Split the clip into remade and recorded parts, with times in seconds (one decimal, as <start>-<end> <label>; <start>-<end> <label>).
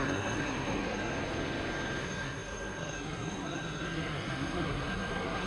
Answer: 0.0-1.1 remade; 1.1-2.0 recorded; 2.0-5.5 remade